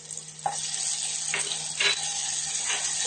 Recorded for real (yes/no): yes